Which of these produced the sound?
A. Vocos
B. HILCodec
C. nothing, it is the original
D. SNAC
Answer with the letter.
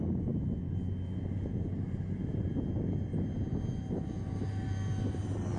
C